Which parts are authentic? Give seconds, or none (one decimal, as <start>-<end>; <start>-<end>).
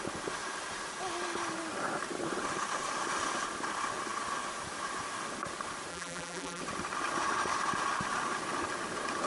0.0-5.9; 6.6-9.3